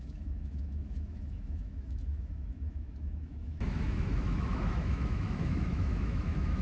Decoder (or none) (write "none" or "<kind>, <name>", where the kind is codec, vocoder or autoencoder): autoencoder, DAC-VAE